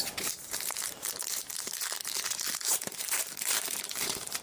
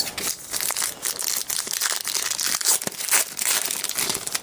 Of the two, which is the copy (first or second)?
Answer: first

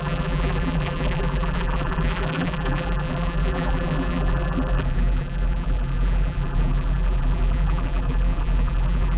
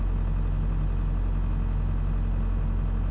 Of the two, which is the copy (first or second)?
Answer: first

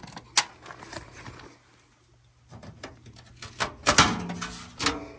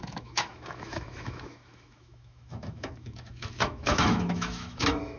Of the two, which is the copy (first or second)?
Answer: second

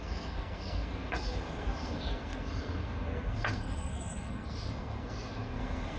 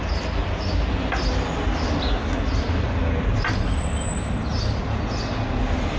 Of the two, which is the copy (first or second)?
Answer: first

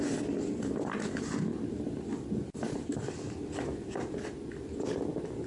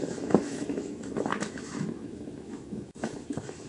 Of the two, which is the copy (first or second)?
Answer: second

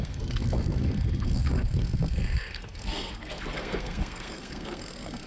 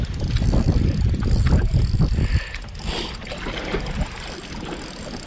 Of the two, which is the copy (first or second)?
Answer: first